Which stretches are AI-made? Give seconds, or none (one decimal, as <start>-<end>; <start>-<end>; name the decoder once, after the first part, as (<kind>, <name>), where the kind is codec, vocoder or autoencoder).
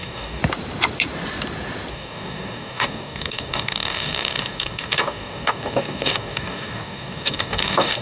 0.0-0.4 (codec, DAC); 1.9-8.0